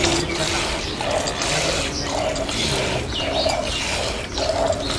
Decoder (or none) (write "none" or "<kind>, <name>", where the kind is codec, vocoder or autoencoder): none